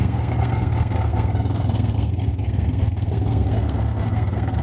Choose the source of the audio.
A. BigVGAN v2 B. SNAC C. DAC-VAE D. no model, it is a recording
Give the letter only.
B